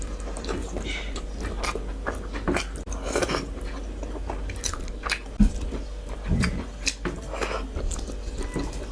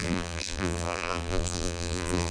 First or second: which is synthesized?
second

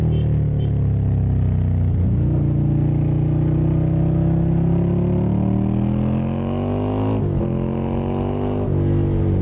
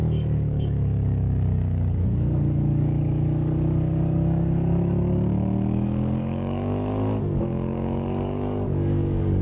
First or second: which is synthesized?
second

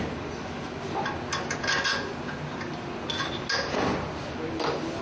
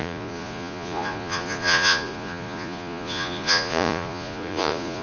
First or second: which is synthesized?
second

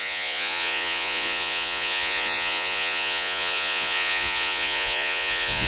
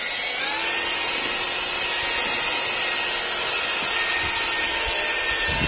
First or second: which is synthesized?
first